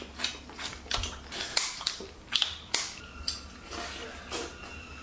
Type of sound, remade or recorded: recorded